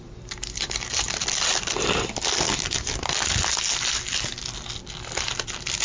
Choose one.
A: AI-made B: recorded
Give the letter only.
B